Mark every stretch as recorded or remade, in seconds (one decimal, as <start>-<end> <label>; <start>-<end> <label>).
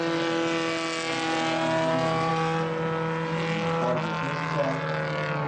0.0-5.5 recorded